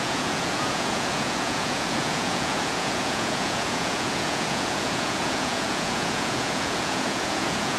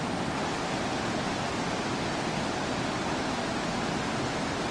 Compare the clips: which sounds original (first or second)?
second